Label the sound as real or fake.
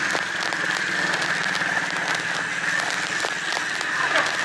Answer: real